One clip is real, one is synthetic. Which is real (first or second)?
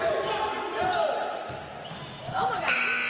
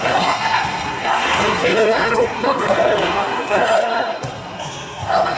first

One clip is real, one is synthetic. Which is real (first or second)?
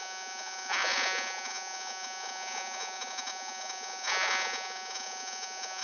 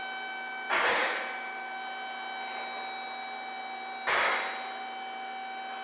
second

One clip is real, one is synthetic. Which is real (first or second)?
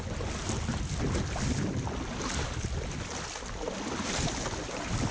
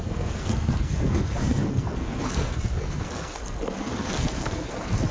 first